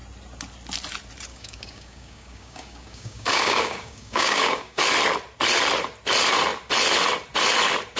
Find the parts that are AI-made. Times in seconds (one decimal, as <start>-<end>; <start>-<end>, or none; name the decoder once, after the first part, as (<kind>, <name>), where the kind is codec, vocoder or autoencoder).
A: 1.3-4.8 (codec, DAC)

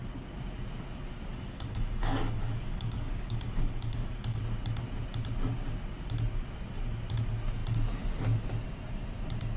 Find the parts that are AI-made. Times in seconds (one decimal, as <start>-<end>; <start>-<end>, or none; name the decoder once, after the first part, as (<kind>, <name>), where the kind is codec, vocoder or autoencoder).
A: 1.3-4.4 (codec, DAC)

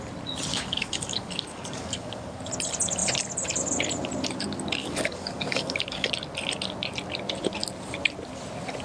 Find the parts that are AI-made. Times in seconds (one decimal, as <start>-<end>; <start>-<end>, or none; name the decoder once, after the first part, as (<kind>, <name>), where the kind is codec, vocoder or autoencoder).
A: 0.5-2.4 (codec, DAC); 4.8-6.1